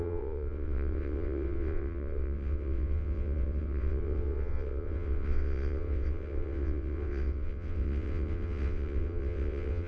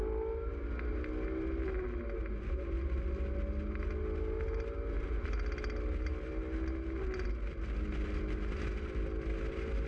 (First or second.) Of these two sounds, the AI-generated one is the first